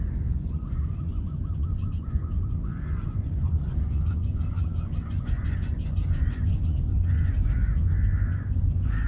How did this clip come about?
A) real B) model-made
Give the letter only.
B